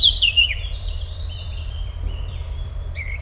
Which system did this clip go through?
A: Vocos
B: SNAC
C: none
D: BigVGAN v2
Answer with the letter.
D